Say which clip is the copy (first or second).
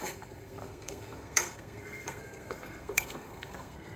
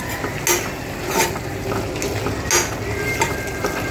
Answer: first